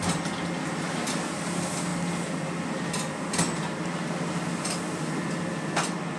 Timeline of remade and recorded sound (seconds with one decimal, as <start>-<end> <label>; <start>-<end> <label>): 0.0-6.2 recorded